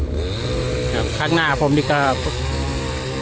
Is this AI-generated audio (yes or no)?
no